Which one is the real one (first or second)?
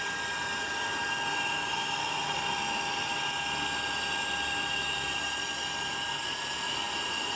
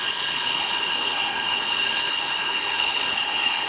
first